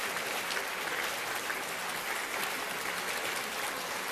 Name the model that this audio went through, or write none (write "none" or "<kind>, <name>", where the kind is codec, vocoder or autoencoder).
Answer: none